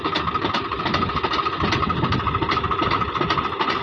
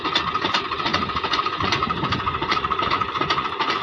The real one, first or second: first